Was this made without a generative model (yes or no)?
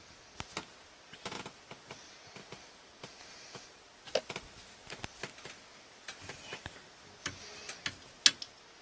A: yes